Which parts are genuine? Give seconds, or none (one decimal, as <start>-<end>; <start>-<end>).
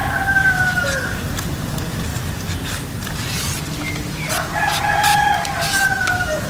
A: 2.1-4.4